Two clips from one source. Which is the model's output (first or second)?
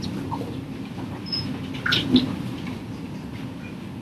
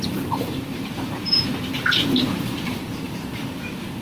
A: second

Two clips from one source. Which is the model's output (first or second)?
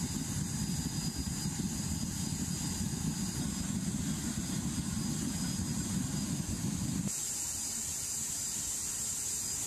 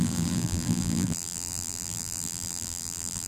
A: second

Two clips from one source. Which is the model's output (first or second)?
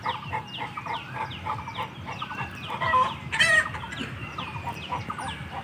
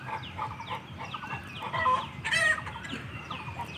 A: second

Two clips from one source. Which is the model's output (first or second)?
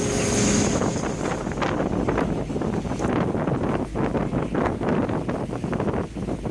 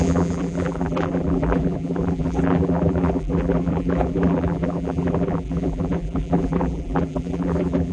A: second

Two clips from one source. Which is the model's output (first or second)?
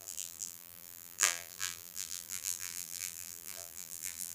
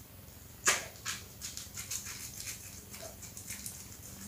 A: first